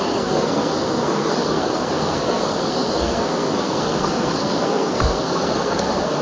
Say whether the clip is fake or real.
fake